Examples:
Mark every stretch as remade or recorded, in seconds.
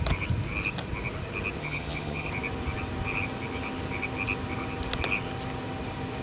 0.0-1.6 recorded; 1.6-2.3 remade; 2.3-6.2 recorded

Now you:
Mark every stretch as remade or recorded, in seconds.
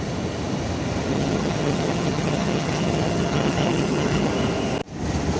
0.0-1.1 recorded; 1.1-4.3 remade; 4.3-5.4 recorded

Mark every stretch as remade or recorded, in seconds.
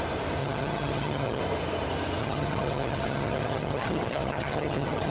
0.0-0.4 recorded; 0.4-1.4 remade; 1.4-2.2 recorded; 2.2-5.1 remade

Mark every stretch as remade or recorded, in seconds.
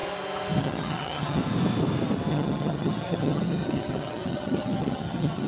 0.0-0.6 recorded; 0.6-1.4 remade; 1.4-2.3 recorded; 2.3-5.5 remade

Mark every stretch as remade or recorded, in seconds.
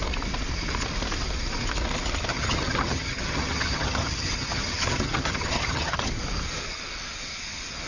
0.0-2.3 recorded; 2.3-6.1 remade; 6.1-7.9 recorded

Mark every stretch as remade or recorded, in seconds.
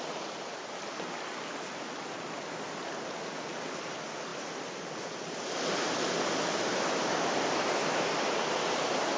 0.0-9.2 recorded